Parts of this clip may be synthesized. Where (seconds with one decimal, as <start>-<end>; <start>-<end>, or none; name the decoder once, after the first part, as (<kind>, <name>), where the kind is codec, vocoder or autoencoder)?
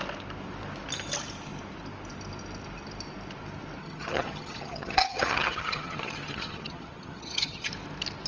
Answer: 3.8-7.7 (vocoder, HiFi-GAN)